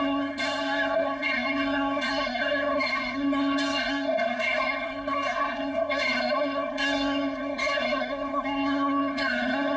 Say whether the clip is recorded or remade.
remade